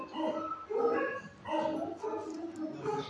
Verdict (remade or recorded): recorded